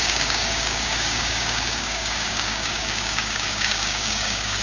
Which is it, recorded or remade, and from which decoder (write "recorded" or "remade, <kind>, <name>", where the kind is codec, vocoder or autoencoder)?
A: remade, codec, DAC